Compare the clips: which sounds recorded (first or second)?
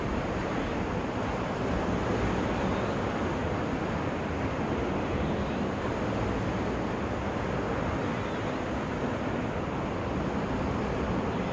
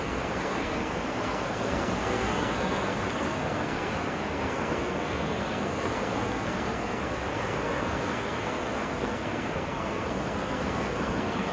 first